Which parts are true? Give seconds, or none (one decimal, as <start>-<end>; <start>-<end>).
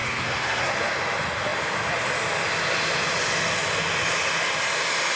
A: 0.7-5.2